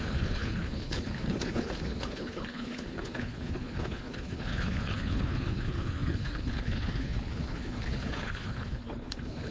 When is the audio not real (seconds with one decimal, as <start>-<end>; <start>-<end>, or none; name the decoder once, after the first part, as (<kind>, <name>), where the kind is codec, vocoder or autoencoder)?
0.0-9.5 (codec, HILCodec)